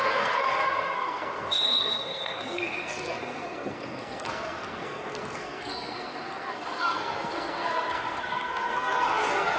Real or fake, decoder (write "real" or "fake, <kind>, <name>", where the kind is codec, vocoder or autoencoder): fake, codec, SNAC